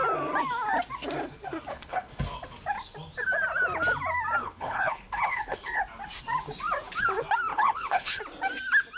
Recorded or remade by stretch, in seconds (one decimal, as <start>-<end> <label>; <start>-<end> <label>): 0.0-1.7 recorded; 1.7-2.2 remade; 2.2-4.4 recorded; 4.4-5.8 remade; 5.8-7.5 recorded; 7.5-8.2 remade; 8.2-9.0 recorded